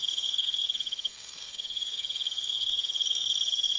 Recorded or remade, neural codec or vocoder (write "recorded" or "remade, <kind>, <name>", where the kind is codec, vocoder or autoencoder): remade, codec, SNAC